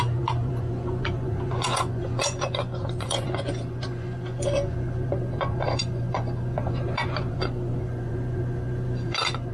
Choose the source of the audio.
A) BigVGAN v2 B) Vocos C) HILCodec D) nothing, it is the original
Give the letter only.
B